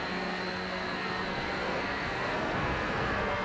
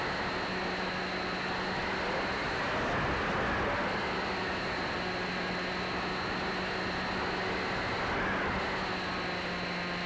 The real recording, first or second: second